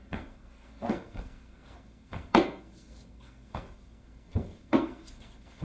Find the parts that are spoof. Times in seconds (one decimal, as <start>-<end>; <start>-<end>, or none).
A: 0.0-5.6